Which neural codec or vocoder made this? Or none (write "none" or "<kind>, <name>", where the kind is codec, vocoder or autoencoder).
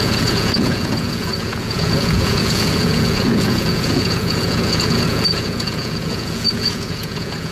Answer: vocoder, Vocos